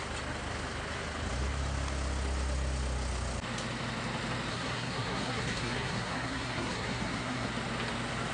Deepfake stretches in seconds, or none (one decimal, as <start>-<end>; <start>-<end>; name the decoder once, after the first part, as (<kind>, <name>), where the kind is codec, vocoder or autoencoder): 4.5-7.5 (codec, SNAC)